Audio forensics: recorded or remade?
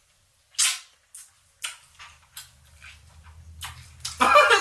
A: recorded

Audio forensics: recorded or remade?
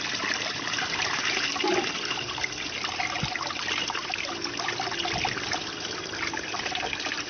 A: recorded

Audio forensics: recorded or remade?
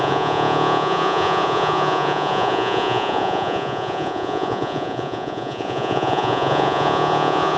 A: remade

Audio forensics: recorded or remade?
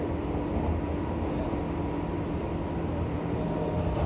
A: recorded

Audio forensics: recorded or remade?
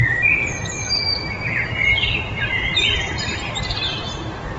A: remade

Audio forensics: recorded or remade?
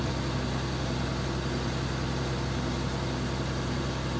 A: recorded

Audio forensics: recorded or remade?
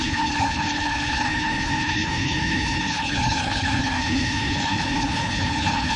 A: remade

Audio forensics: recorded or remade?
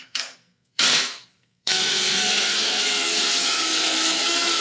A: remade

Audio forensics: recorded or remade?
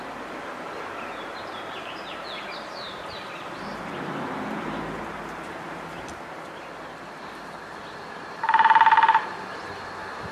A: remade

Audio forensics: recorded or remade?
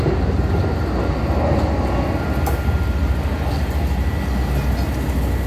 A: recorded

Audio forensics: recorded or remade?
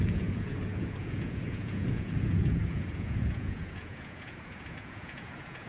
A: remade